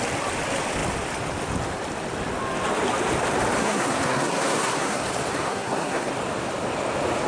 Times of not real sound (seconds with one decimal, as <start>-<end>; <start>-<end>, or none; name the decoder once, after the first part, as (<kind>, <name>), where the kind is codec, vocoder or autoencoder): 3.6-5.0 (codec, SNAC); 5.4-6.1